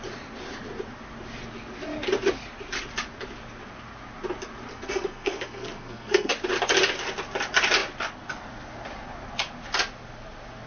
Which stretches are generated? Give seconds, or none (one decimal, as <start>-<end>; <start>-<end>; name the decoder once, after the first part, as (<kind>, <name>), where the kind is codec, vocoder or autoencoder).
4.7-6.3 (codec, SNAC)